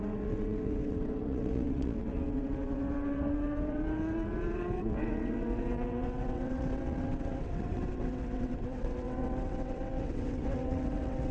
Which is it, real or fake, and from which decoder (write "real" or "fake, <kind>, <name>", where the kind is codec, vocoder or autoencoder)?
fake, vocoder, WaveNeXt